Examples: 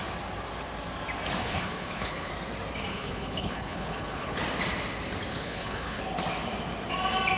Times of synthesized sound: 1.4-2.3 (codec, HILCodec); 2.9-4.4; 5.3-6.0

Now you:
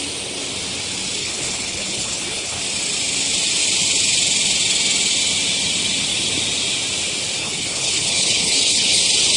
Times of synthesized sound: 1.2-2.6 (codec, HILCodec); 7.4-9.0

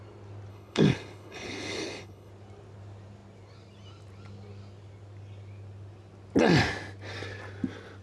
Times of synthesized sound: 0.5-2.3 (codec, HILCodec)

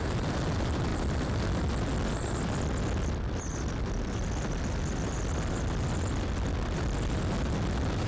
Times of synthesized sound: none

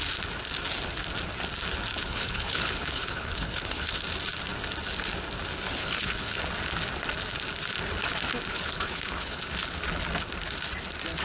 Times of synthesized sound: 2.0-3.9 (codec, HILCodec); 5.8-6.4; 8.5-9.4

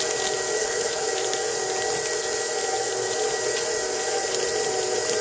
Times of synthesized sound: 0.6-1.1 (codec, HILCodec)

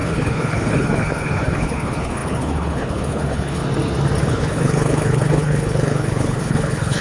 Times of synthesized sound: 0.0-3.6 (codec, HILCodec); 4.3-7.0